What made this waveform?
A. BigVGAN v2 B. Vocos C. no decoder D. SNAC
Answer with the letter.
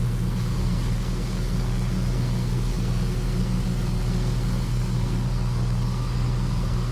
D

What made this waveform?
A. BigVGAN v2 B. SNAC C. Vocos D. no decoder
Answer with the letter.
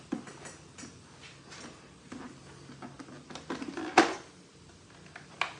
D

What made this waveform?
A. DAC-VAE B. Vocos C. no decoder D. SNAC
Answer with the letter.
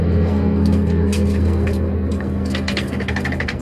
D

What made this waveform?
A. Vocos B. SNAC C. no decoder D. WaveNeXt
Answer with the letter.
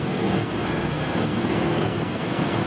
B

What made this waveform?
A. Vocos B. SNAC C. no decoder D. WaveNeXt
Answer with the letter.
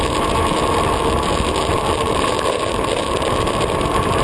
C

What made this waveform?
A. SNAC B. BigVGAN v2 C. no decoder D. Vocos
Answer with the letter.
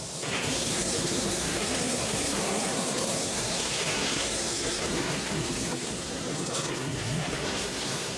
A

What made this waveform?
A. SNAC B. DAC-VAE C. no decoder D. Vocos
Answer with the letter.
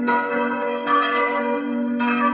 A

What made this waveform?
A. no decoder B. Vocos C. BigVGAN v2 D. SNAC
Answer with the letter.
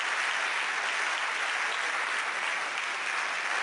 A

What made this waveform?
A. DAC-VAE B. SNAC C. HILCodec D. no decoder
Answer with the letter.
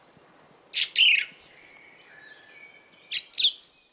D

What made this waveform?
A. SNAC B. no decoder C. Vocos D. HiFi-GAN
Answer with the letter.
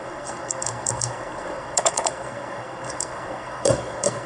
A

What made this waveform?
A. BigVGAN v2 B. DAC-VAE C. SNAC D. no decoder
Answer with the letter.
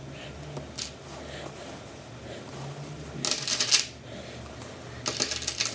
D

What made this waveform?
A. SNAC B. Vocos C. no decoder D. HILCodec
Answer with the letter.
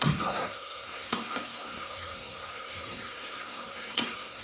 A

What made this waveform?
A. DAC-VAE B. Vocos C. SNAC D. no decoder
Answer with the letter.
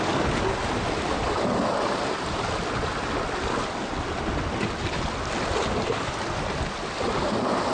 D